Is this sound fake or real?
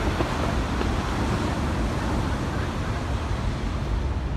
real